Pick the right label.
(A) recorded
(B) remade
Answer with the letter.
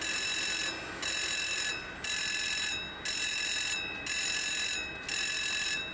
A